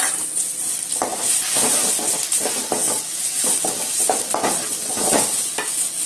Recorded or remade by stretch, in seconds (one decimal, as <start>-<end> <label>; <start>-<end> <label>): 0.0-6.1 recorded